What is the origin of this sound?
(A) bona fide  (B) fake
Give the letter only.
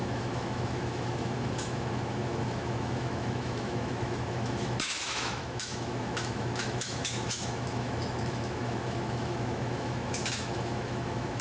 B